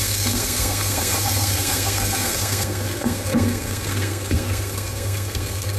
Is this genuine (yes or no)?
no